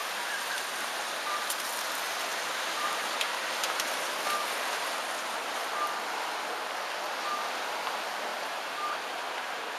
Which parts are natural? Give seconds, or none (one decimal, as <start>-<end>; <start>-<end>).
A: 0.0-2.3; 3.3-8.3